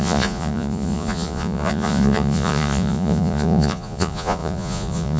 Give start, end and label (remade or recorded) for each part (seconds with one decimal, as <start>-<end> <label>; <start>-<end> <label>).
0.0-5.2 remade